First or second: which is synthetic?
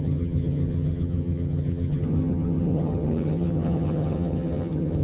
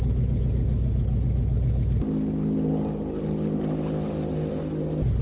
first